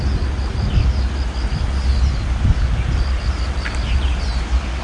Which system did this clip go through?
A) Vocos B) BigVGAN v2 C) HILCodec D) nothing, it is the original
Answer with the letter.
D